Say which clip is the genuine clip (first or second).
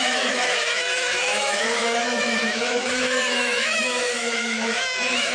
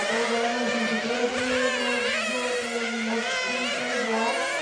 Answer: second